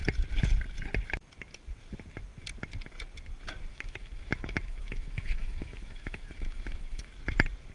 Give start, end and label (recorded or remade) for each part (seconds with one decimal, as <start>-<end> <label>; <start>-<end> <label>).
0.0-3.7 recorded; 3.7-7.1 remade; 7.1-7.7 recorded